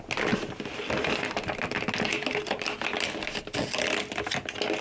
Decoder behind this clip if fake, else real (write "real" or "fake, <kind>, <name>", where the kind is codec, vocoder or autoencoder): real